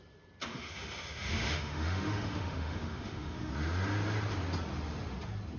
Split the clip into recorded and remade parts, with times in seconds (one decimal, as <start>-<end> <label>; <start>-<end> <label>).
0.0-0.5 recorded; 0.5-3.5 remade; 3.5-5.6 recorded